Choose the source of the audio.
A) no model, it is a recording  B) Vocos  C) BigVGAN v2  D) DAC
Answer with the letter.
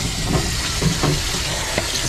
A